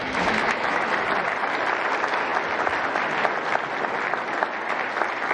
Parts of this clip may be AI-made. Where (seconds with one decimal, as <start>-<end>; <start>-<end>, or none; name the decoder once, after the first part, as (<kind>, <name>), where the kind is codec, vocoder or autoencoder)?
0.0-0.9 (autoencoder, DAC-VAE)